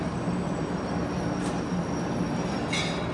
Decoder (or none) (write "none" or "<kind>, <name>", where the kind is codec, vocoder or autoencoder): none